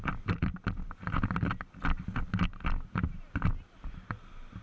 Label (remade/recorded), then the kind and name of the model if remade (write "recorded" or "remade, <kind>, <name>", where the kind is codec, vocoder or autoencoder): recorded